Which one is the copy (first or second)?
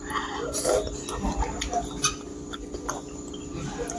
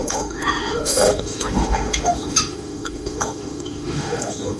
second